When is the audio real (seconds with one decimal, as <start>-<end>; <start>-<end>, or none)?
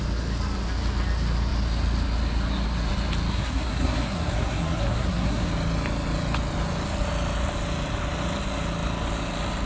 0.0-3.3; 5.5-9.7